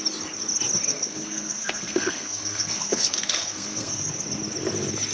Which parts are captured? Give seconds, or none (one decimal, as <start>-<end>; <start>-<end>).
0.0-0.9; 4.0-5.1